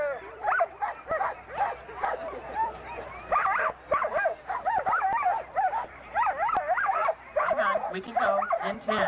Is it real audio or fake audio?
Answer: real